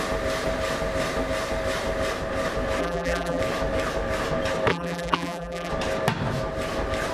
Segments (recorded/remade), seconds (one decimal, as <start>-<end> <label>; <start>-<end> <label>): 0.0-2.8 recorded; 2.8-3.4 remade; 3.4-4.7 recorded; 4.7-5.7 remade; 5.7-7.1 recorded